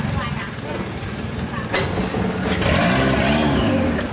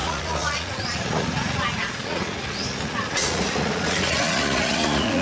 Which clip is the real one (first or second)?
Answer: first